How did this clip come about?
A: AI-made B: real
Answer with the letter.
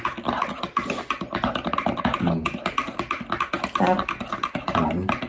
B